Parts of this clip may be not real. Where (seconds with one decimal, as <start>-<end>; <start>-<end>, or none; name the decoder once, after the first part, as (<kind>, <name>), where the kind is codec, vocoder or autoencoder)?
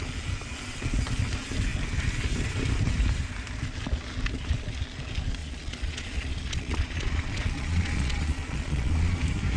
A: 5.4-9.2 (vocoder, Vocos)